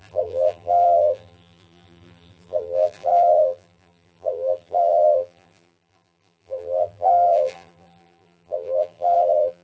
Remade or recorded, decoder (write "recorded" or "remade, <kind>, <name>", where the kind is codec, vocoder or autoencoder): remade, vocoder, BigVGAN v2